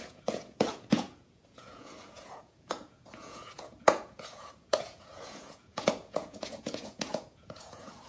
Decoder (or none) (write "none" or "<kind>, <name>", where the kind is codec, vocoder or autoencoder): vocoder, Vocos